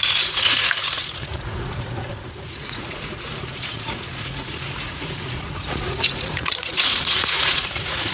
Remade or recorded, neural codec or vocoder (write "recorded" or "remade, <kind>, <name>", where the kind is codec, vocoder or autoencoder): remade, vocoder, Vocos